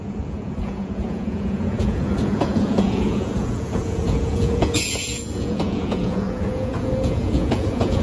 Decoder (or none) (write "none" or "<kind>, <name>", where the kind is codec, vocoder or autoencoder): vocoder, Vocos